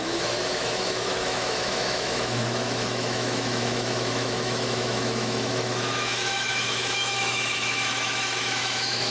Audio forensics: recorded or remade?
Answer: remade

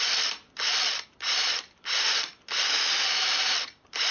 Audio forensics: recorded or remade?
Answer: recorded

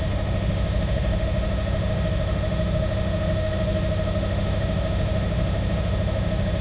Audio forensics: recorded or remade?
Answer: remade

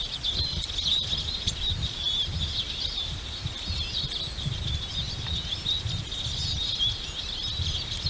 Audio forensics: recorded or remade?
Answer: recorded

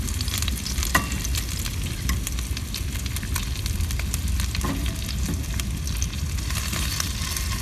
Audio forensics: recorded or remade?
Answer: recorded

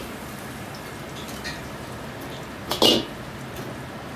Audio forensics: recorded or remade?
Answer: recorded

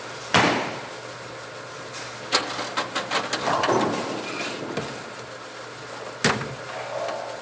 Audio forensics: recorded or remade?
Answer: recorded